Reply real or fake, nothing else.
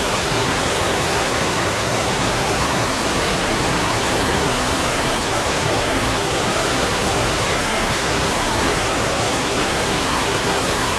fake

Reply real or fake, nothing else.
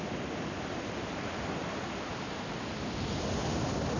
real